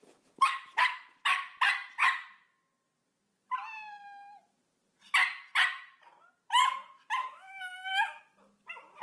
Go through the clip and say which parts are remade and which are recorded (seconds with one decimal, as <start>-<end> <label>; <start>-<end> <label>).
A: 0.0-7.2 recorded; 7.2-8.2 remade; 8.2-9.0 recorded